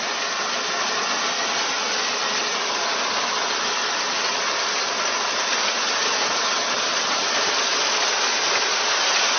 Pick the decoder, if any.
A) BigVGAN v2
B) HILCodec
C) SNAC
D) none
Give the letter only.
D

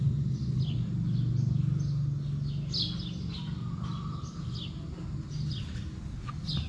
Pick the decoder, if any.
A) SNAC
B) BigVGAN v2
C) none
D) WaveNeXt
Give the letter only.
C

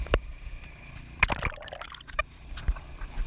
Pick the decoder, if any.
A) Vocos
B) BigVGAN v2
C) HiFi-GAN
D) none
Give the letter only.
B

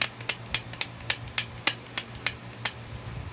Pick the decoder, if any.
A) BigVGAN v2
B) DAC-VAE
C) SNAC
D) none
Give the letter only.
D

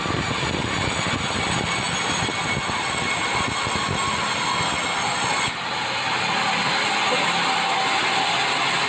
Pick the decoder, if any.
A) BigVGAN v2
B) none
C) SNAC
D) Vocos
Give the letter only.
B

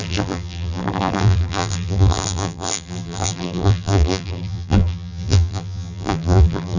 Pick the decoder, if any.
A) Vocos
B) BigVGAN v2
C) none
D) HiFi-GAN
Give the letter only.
B